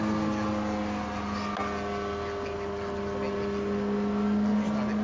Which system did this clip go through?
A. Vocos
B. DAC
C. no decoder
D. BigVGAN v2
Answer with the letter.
C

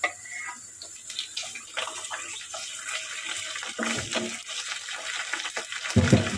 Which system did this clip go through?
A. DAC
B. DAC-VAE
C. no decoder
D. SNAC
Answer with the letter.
C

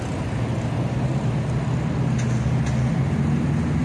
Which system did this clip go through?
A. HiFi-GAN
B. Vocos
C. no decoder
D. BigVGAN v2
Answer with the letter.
C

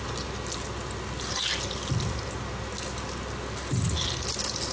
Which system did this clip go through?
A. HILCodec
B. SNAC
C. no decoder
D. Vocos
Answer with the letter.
C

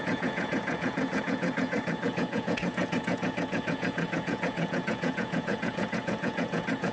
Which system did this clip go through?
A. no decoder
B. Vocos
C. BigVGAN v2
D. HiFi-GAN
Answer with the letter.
B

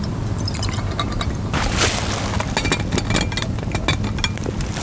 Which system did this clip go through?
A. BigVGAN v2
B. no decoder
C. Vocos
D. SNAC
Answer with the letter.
B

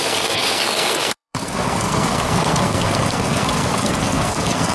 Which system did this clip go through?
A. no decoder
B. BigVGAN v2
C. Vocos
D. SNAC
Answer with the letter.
D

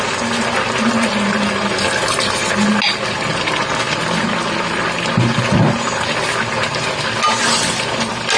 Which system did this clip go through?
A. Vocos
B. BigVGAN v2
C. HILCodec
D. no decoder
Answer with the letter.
D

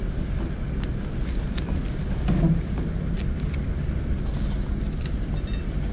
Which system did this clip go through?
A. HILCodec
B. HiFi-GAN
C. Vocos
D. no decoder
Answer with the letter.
D